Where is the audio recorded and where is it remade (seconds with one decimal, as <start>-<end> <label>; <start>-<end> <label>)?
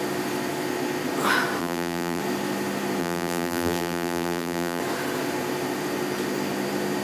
0.0-1.6 recorded; 1.6-2.2 remade; 2.2-3.0 recorded; 3.0-4.8 remade; 4.8-7.0 recorded